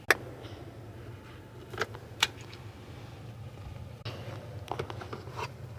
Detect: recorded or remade recorded